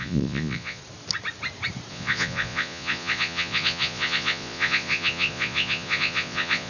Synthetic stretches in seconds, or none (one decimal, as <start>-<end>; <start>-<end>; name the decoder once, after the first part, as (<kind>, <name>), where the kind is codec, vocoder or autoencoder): 0.0-0.8 (vocoder, Vocos); 1.9-6.7